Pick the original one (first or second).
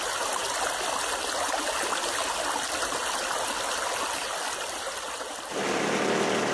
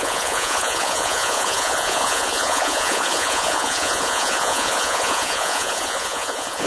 first